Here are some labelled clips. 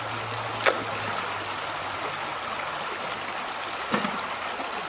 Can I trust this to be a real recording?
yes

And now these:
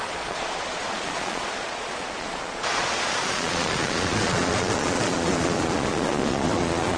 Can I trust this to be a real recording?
no